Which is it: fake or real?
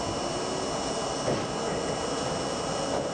real